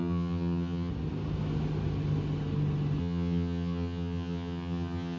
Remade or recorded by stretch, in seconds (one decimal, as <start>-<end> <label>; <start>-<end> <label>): 0.0-0.9 remade; 0.9-3.0 recorded; 3.0-5.2 remade